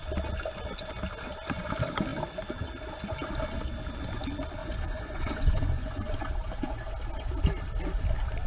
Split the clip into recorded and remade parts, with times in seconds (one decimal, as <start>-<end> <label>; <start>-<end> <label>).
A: 0.0-4.6 recorded; 4.6-6.3 remade; 6.3-8.5 recorded

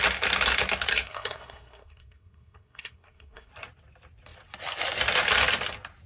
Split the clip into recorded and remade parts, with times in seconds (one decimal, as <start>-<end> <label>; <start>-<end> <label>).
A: 0.0-0.9 recorded; 0.9-3.5 remade; 3.5-6.1 recorded

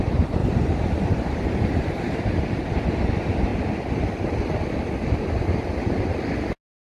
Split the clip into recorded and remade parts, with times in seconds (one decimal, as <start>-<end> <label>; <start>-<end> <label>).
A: 0.0-0.4 recorded; 0.4-2.2 remade; 2.2-7.0 recorded

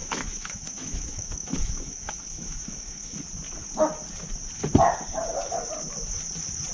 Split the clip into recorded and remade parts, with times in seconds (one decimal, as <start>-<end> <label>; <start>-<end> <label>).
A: 0.0-3.2 remade; 3.2-6.7 recorded

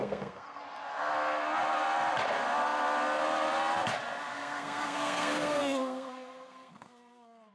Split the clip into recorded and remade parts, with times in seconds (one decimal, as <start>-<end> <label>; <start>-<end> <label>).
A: 0.0-0.6 remade; 0.6-4.3 recorded; 4.3-7.5 remade

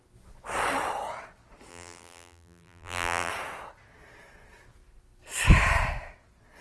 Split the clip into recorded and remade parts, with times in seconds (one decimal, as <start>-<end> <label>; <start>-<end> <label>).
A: 0.0-1.7 recorded; 1.7-3.3 remade; 3.3-6.6 recorded